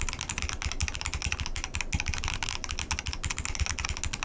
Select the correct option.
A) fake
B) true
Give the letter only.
B